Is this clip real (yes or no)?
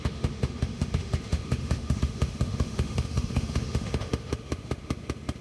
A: no